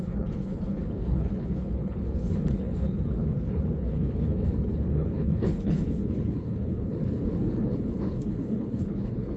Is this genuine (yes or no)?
no